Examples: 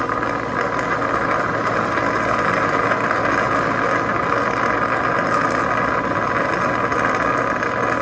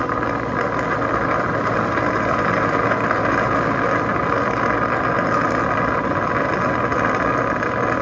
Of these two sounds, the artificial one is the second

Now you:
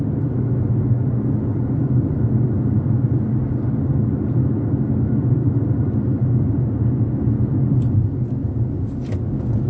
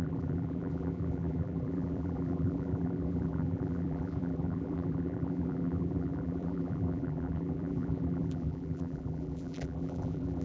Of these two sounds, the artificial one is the second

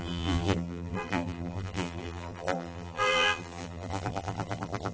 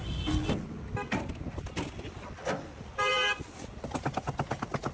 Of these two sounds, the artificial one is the first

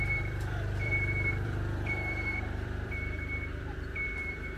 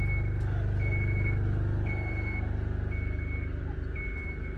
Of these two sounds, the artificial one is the first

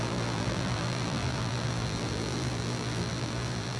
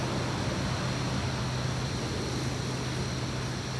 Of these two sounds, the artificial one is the first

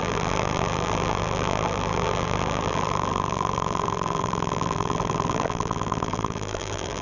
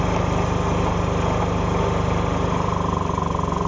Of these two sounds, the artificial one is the first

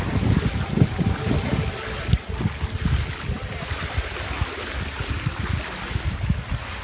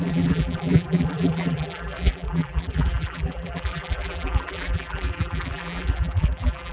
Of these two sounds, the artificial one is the second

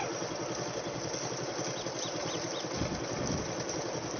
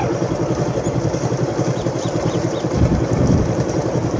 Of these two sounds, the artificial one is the second